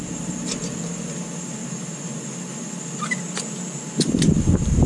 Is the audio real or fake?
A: real